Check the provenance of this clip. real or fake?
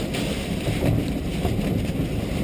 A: fake